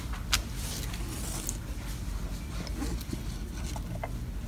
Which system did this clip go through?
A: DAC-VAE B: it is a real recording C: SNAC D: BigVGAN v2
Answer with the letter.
B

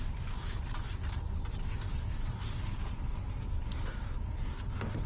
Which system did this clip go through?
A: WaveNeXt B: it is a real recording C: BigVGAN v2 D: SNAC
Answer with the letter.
B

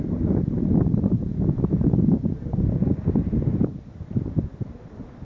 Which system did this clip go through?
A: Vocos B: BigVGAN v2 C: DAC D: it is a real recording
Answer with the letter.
D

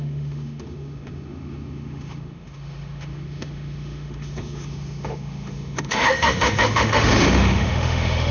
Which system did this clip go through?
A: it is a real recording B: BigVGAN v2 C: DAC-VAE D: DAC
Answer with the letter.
C